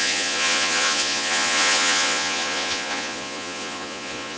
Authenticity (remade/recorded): remade